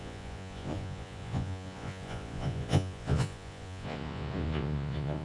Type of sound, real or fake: fake